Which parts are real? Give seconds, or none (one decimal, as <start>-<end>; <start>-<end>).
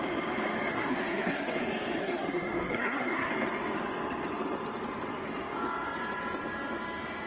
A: 0.0-0.7; 1.6-2.0; 3.3-7.3